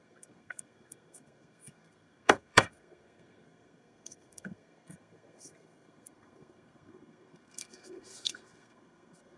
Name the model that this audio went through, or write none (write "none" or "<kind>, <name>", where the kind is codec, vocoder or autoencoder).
codec, SNAC